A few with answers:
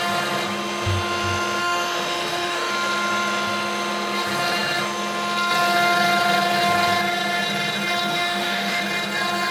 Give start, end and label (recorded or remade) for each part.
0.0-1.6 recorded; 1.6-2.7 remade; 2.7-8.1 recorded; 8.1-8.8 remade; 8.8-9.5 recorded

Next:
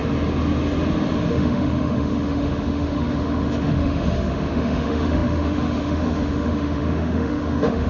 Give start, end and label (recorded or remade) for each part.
0.0-1.3 recorded; 1.3-7.9 remade

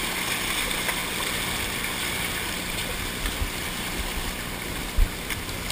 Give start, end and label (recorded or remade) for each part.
0.0-5.7 recorded

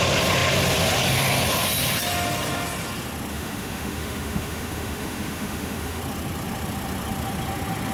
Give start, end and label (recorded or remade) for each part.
0.0-3.3 recorded; 3.3-6.0 remade; 6.0-7.9 recorded

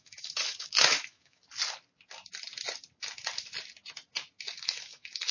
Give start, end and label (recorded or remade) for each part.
0.0-1.4 remade; 1.4-4.4 recorded; 4.4-5.3 remade